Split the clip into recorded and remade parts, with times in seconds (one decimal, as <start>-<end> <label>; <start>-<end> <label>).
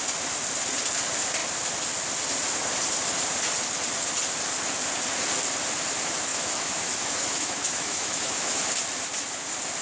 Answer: 0.0-6.3 recorded; 6.3-8.6 remade; 8.6-9.8 recorded